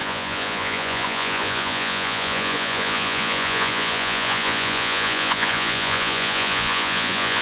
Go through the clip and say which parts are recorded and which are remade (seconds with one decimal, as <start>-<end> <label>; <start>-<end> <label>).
0.0-7.4 remade